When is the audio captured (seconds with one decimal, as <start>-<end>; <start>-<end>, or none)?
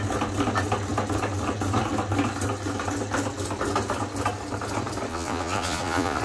0.0-5.1